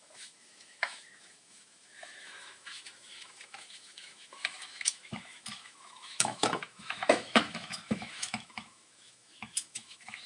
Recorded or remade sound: remade